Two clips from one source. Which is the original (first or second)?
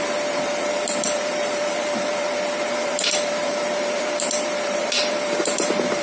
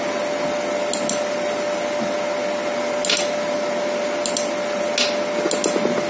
second